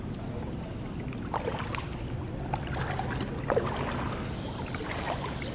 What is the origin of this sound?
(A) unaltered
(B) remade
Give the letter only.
A